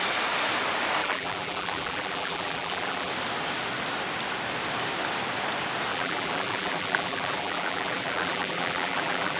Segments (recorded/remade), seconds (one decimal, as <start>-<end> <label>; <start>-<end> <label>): 0.0-1.0 recorded; 1.0-3.1 remade; 3.1-5.9 recorded; 5.9-9.4 remade